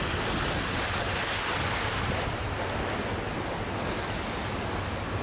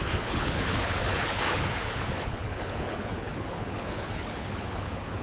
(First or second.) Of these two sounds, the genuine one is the first